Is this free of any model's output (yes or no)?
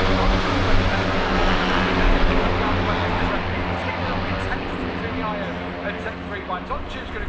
yes